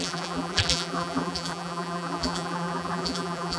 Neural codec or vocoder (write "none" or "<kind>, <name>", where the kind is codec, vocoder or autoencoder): vocoder, BigVGAN v2